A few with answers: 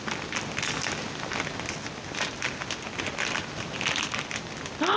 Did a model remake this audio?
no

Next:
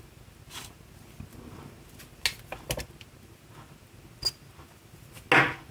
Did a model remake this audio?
no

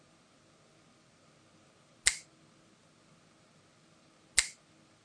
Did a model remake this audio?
no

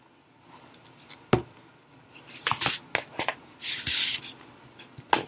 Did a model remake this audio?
no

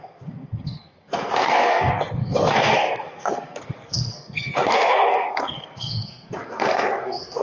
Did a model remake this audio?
yes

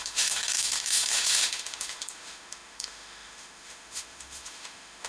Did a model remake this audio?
yes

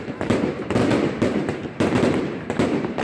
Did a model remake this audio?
yes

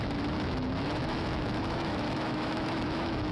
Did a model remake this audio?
yes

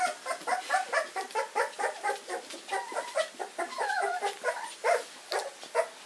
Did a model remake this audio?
no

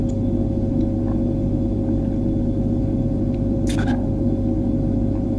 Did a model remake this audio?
no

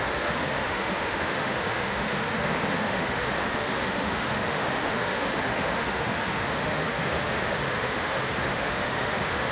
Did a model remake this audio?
yes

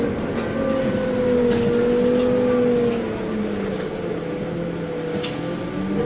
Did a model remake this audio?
no